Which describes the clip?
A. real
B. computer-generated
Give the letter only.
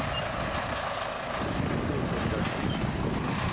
A